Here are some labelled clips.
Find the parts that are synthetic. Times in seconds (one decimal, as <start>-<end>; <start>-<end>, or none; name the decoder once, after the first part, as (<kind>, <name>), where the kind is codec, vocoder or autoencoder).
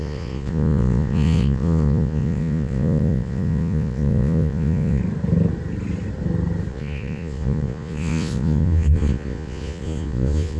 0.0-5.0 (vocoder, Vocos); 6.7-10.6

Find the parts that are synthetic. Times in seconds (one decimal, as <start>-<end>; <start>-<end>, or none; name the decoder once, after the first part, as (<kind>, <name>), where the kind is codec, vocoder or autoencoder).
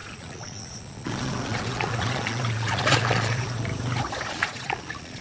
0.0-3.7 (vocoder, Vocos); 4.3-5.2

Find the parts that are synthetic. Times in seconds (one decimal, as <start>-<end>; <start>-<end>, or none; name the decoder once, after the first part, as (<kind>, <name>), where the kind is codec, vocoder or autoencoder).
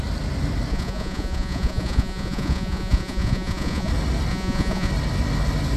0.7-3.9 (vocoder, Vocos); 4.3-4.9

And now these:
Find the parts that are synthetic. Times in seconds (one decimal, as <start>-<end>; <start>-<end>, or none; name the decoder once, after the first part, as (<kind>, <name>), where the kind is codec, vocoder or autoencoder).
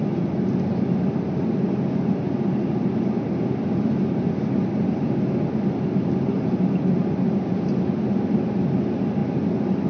none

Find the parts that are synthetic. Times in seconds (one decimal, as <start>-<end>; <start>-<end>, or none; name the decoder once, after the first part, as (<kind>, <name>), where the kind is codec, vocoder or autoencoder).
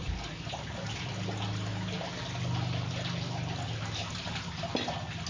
none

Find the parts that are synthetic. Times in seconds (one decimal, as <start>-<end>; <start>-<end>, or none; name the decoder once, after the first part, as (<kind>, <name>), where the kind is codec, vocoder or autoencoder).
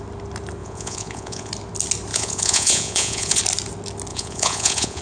0.6-1.5 (vocoder, Vocos); 2.1-3.4; 4.1-5.0